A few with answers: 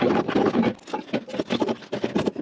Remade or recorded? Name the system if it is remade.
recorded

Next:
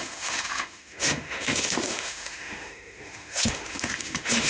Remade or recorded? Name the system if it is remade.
remade, autoencoder, DAC-VAE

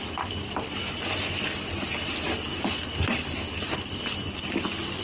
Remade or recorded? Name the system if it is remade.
recorded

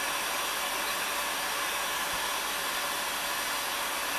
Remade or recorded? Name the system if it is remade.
recorded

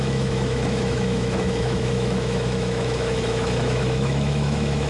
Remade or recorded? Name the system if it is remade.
remade, autoencoder, DAC-VAE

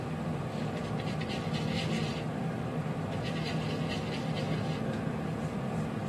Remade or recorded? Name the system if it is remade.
recorded